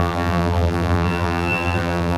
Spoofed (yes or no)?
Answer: yes